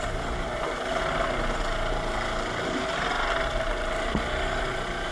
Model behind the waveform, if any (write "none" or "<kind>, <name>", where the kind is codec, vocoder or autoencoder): none